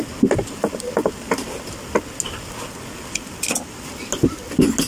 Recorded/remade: recorded